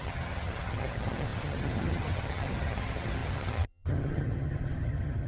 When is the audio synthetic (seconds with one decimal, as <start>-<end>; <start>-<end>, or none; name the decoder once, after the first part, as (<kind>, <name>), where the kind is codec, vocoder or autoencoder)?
0.0-5.3 (vocoder, HiFi-GAN)